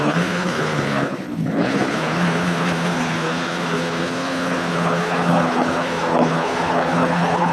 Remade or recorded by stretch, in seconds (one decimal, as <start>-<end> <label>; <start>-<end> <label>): 0.0-7.5 remade